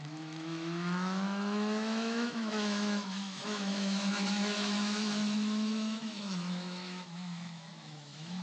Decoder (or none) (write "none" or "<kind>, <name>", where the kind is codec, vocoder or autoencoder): autoencoder, DAC-VAE